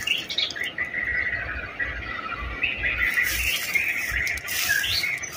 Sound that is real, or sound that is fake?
real